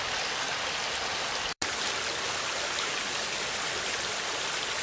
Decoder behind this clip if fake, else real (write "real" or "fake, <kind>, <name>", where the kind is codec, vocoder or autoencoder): real